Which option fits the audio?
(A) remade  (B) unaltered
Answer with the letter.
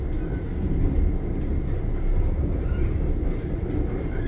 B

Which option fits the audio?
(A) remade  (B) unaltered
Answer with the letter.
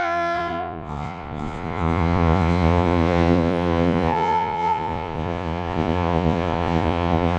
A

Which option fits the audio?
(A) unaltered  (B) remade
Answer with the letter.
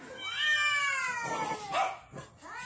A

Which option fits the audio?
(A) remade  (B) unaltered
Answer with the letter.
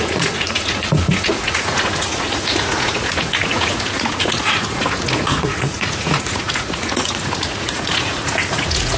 A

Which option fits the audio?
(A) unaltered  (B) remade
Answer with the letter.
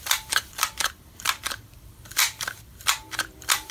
B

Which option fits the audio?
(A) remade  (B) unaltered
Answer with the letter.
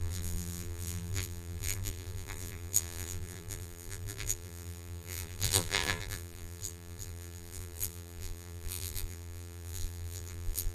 A